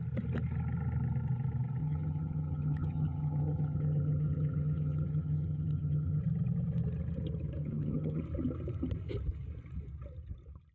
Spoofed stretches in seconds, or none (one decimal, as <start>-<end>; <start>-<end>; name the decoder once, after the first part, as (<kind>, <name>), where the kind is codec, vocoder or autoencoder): 1.8-6.2 (vocoder, HiFi-GAN); 7.6-8.2